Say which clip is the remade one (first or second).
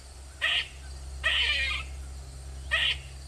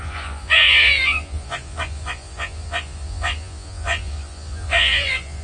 second